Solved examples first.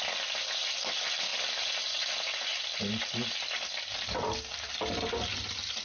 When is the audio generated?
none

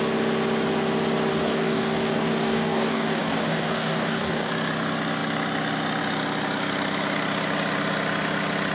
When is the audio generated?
1.3-4.5 (codec, DAC)

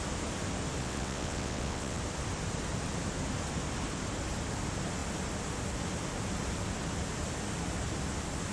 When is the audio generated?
0.8-2.0 (vocoder, WaveNeXt)

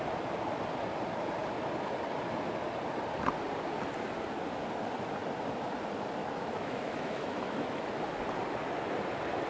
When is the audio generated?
6.2-7.9 (autoencoder, DAC-VAE)

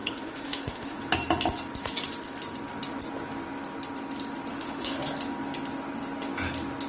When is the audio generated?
0.0-1.0 (autoencoder, DAC-VAE); 4.5-5.0

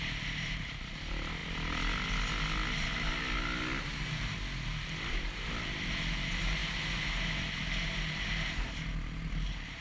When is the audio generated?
none